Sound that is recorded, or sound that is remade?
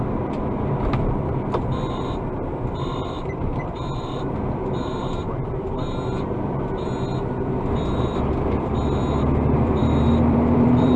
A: remade